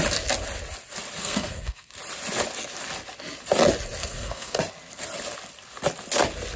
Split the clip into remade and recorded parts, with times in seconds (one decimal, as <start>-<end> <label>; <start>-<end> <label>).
0.0-1.2 recorded; 1.2-1.9 remade; 1.9-4.0 recorded; 4.0-4.6 remade; 4.6-6.6 recorded